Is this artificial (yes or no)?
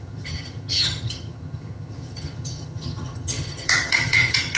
yes